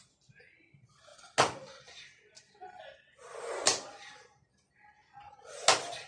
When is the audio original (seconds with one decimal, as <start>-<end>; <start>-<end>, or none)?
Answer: 0.0-6.1